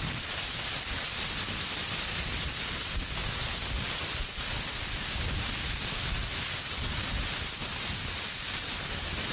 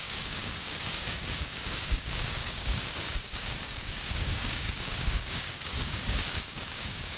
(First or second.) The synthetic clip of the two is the second